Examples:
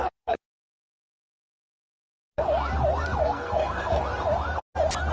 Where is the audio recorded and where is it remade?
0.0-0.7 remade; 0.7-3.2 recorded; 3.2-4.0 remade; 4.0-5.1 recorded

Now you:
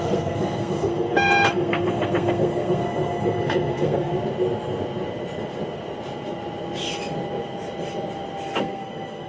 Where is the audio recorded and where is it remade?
0.0-4.1 remade; 4.1-8.6 recorded; 8.6-9.3 remade

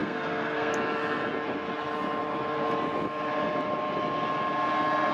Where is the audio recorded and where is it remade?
0.0-0.7 remade; 0.7-5.1 recorded